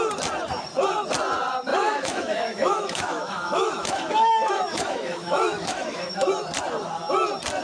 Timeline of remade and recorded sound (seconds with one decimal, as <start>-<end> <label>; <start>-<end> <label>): 0.0-1.7 recorded; 1.7-6.3 remade; 6.3-7.6 recorded